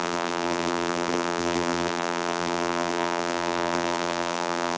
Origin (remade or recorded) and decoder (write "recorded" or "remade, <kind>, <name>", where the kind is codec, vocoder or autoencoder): remade, vocoder, BigVGAN v2